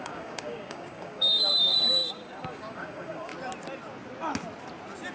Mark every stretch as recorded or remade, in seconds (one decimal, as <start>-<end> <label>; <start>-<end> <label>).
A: 0.0-3.3 remade; 3.3-5.1 recorded